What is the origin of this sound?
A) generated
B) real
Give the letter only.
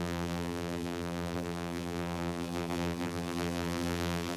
A